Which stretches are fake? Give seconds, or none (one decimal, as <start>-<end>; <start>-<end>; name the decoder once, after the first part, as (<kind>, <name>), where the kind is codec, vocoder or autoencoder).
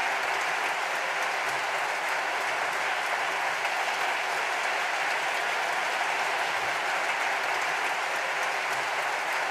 none